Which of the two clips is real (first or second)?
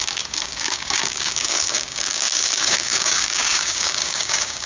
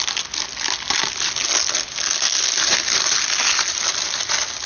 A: second